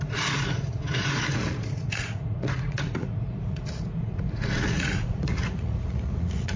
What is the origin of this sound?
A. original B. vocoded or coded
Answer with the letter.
B